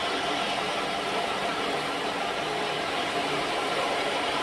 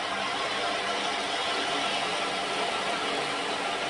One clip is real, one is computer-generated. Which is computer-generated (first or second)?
first